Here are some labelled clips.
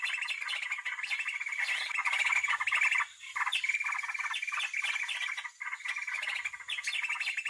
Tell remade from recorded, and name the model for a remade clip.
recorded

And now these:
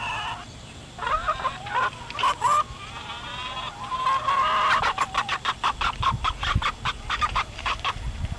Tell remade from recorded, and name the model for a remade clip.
recorded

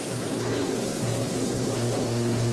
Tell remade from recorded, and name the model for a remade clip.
remade, codec, SNAC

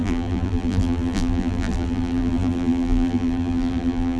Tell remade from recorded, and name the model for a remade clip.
remade, vocoder, BigVGAN v2